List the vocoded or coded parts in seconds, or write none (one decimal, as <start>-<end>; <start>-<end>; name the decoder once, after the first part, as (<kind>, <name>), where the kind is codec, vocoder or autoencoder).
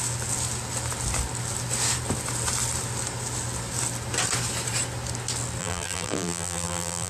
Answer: 5.6-7.1 (vocoder, BigVGAN v2)